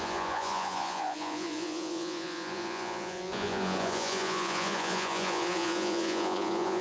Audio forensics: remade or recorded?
remade